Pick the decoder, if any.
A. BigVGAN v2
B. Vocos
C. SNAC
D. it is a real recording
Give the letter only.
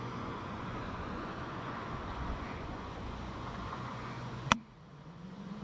B